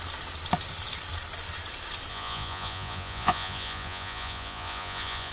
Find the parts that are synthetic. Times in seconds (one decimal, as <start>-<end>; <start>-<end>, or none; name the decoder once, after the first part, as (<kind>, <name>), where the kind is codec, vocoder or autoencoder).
2.1-5.3 (vocoder, Vocos)